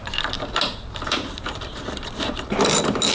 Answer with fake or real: fake